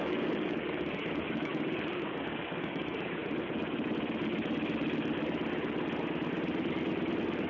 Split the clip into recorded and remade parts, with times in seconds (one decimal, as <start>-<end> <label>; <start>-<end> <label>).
0.0-3.2 remade; 3.2-7.5 recorded